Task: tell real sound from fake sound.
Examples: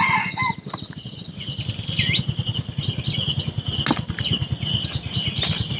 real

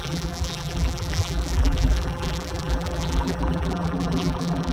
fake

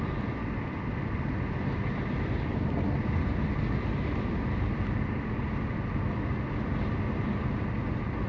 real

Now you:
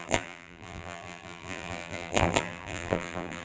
fake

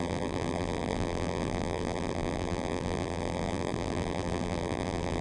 fake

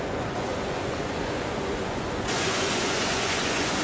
fake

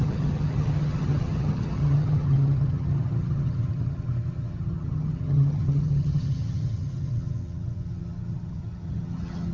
fake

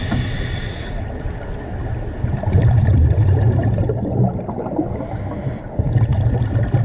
real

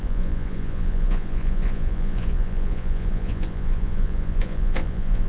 fake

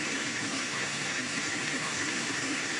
fake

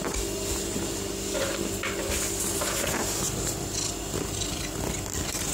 real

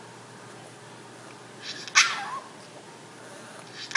real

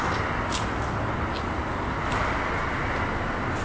real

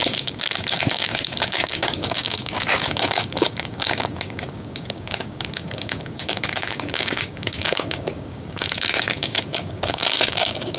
fake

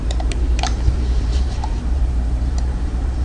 fake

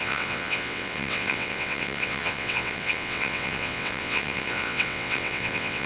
fake